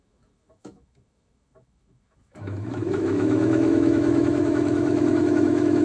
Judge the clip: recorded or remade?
remade